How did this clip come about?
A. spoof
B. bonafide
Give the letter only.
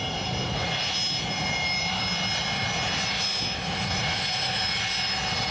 B